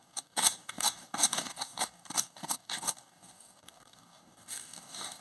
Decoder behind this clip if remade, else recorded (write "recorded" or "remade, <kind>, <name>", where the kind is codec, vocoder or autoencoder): remade, codec, DAC